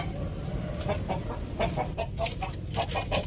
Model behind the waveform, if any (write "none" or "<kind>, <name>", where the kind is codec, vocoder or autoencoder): none